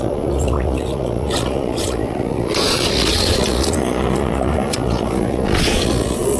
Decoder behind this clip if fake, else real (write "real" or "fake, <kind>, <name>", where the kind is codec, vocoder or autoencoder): fake, vocoder, Vocos